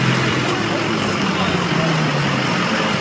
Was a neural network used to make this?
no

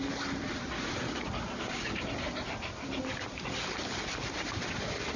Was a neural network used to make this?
no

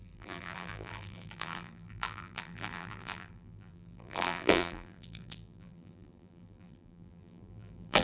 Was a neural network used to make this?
yes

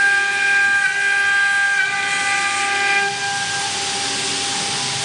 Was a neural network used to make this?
no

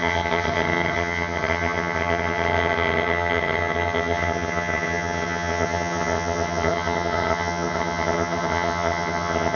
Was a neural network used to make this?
yes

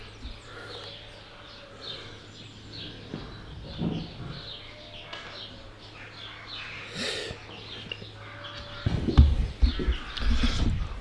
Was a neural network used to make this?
no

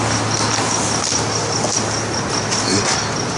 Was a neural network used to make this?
no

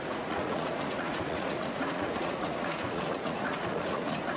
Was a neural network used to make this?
yes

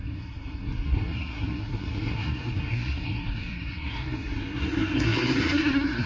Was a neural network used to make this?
yes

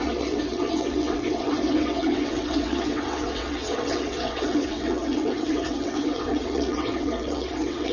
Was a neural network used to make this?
yes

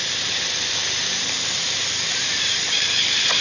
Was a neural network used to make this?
yes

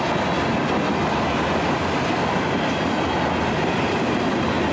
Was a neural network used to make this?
no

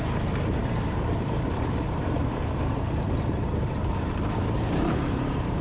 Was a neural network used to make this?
yes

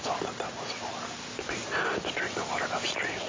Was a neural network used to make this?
no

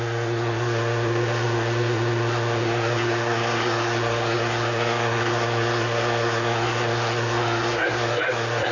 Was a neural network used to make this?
yes